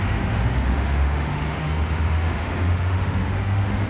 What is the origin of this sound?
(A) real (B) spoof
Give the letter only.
B